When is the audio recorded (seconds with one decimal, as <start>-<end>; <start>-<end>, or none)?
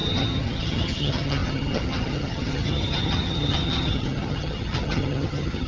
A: none